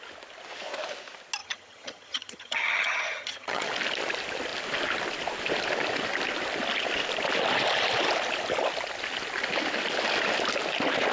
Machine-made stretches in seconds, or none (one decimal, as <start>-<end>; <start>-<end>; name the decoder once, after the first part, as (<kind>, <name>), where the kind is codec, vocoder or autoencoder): 1.4-3.7 (vocoder, HiFi-GAN)